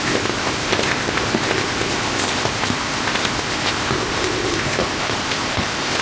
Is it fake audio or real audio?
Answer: fake